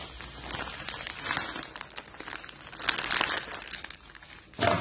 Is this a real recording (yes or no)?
yes